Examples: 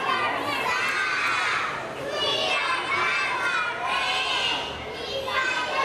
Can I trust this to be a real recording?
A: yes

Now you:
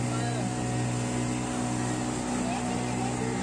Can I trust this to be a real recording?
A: yes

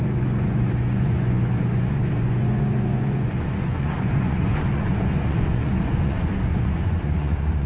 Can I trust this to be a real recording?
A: no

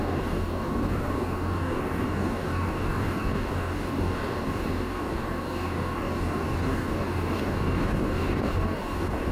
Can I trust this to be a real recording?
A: no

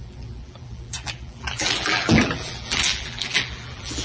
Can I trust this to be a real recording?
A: no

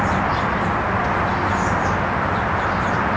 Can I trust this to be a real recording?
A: yes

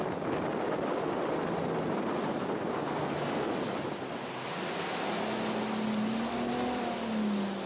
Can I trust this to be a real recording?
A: yes